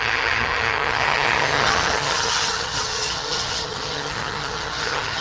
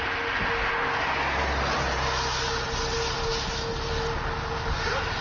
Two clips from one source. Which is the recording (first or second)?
second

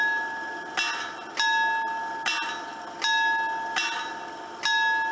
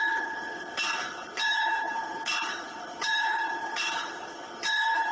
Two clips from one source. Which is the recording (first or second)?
first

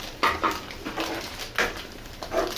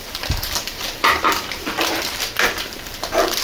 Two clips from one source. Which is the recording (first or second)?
first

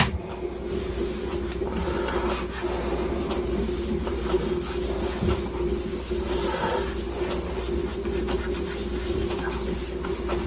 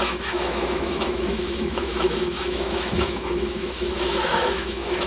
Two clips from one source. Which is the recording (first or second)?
first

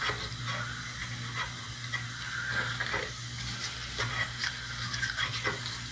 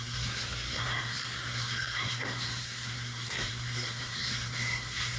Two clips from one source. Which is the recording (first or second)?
first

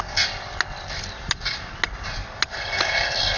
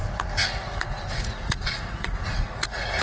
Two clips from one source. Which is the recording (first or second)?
first